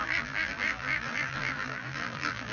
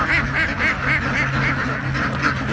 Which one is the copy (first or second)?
first